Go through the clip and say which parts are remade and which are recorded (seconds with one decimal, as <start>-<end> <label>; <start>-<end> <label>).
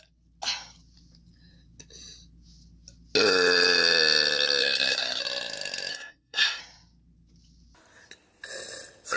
0.0-4.6 recorded; 4.6-5.2 remade; 5.2-5.9 recorded; 5.9-6.6 remade; 6.6-9.2 recorded